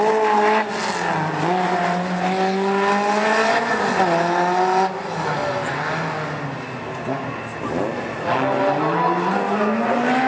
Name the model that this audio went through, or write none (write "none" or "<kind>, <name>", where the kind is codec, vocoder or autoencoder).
none